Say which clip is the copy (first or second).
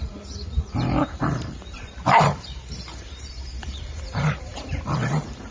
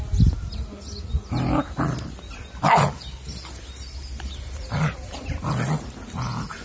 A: first